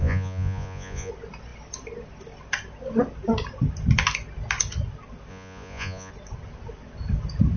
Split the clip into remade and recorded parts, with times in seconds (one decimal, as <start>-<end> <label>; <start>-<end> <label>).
0.0-1.1 remade; 1.1-5.3 recorded; 5.3-6.1 remade; 6.1-7.6 recorded